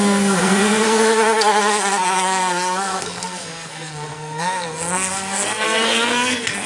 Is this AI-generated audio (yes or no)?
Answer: yes